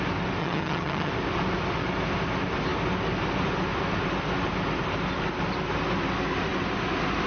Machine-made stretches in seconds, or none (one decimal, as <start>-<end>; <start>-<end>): 0.4-1.1